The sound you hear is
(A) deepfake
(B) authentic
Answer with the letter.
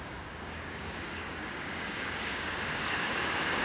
A